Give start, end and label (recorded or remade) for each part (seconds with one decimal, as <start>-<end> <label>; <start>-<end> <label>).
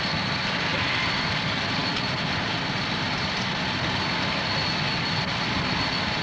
0.0-6.2 recorded